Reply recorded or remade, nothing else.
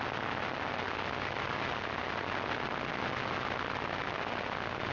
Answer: recorded